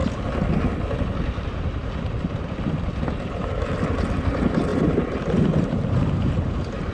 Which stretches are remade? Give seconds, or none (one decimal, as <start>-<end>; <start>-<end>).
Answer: 4.7-6.3